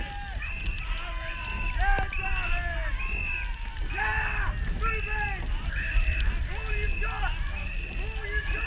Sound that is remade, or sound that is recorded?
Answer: recorded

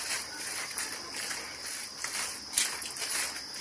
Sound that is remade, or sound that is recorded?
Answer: recorded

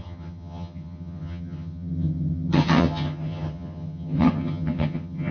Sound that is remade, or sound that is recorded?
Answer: remade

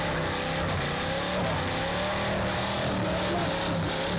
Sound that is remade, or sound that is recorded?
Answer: recorded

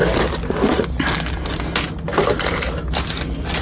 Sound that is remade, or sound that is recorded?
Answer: recorded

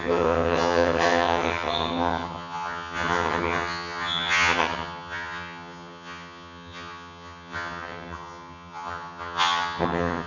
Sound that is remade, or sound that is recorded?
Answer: remade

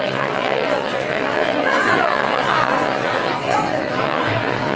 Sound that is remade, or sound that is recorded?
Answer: remade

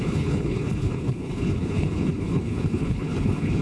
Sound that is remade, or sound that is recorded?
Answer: remade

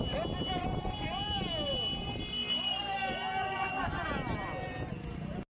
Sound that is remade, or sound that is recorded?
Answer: recorded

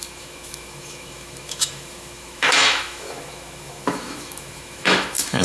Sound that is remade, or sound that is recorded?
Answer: remade